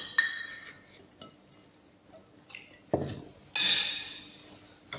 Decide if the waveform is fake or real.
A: real